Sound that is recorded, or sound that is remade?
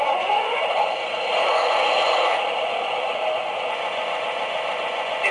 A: remade